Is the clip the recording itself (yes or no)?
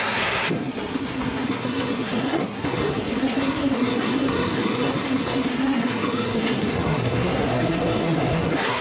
no